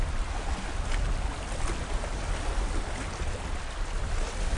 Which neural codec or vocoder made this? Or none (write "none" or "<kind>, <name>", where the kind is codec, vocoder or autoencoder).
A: none